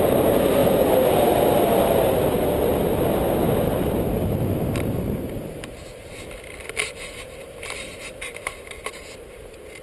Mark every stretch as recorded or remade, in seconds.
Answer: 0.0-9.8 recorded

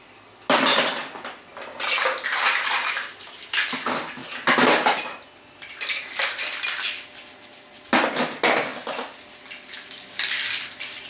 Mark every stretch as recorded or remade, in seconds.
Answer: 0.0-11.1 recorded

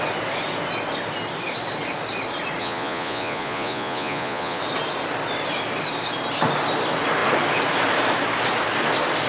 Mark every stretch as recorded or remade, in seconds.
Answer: 0.0-2.6 recorded; 2.6-4.6 remade; 4.6-9.3 recorded

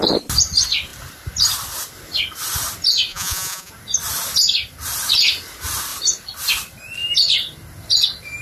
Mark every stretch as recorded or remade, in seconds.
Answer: 0.0-3.1 recorded; 3.1-3.7 remade; 3.7-8.4 recorded

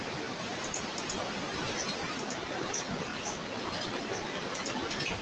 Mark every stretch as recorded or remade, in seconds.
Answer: 0.0-5.2 recorded

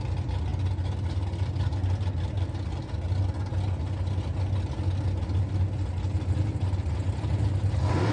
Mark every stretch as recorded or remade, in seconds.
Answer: 0.0-8.1 recorded

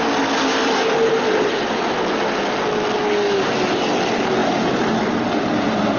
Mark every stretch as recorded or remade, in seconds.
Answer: 0.0-6.0 recorded

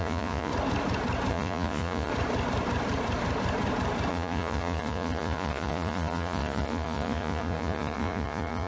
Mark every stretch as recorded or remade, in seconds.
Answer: 0.0-0.5 remade; 0.5-1.3 recorded; 1.3-2.1 remade; 2.1-4.1 recorded; 4.1-8.7 remade